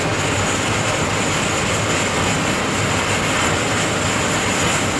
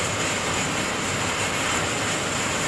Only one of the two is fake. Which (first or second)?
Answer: second